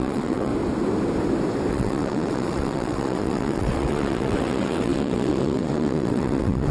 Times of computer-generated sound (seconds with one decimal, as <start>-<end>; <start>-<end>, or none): 0.0-0.5; 1.7-6.7